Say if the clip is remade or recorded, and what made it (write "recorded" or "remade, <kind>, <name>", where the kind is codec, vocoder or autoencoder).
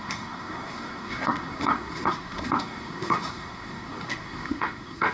remade, codec, SNAC